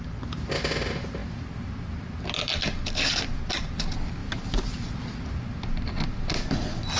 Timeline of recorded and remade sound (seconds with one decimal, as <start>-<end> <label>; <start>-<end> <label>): 0.0-7.0 recorded